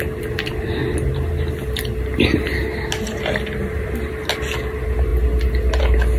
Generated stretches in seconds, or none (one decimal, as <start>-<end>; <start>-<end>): none

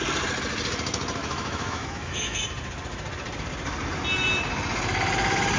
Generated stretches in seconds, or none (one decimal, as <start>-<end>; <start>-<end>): 1.2-2.4

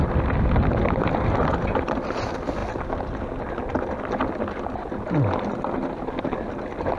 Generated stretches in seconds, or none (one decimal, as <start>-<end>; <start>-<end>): none

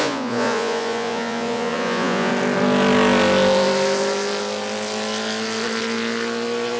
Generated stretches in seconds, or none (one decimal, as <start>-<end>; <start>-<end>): 0.0-2.3

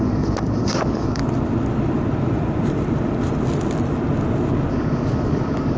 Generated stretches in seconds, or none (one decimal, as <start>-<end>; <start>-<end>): 0.0-1.2; 4.7-5.8